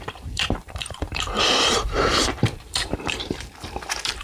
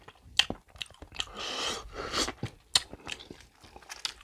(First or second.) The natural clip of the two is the second